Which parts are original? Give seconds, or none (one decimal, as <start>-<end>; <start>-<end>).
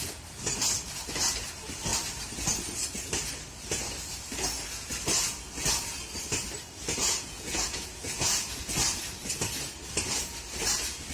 0.0-7.0; 8.8-11.1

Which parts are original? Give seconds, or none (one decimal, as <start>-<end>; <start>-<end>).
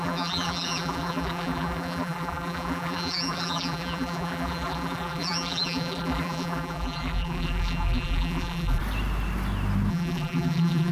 8.8-9.9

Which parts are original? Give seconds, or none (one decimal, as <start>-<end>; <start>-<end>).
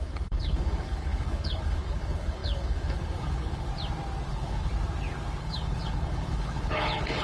3.7-4.3; 4.7-5.4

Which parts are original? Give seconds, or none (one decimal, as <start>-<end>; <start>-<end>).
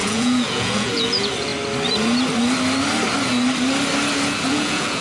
1.5-4.5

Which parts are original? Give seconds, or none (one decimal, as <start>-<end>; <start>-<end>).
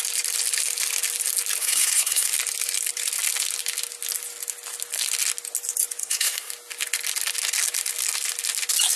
0.0-1.6; 2.3-6.0; 6.5-9.0